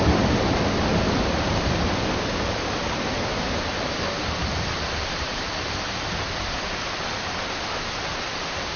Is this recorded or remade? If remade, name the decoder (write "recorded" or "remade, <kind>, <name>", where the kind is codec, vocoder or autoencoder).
recorded